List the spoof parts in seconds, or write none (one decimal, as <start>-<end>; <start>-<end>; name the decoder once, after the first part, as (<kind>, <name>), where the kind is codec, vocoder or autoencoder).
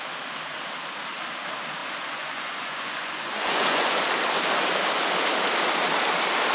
1.8-4.0 (vocoder, Vocos)